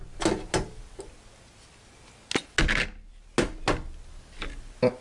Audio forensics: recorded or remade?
recorded